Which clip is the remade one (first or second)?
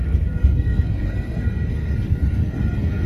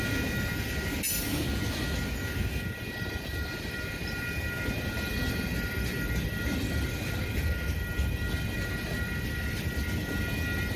first